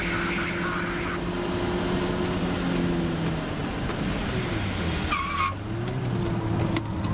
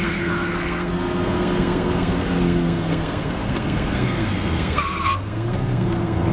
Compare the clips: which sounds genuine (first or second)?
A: first